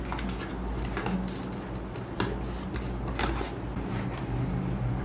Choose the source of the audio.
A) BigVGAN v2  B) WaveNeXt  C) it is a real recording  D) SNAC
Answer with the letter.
C